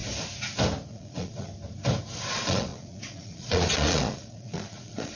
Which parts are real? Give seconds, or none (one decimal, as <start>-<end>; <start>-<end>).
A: 0.0-0.9; 1.5-2.3

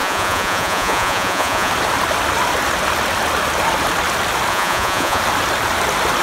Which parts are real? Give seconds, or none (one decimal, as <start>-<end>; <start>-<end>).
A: 1.7-4.5; 5.2-6.2

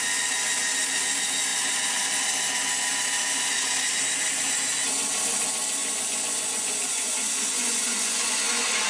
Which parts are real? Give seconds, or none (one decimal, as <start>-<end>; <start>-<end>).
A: 0.0-5.8

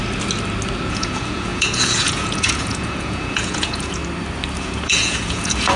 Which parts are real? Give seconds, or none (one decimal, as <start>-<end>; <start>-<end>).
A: 0.0-0.9; 4.0-4.6